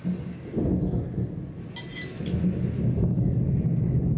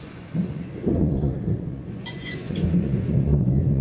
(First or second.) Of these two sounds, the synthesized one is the second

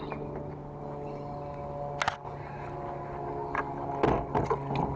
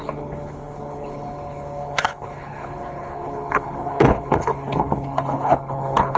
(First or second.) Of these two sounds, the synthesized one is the second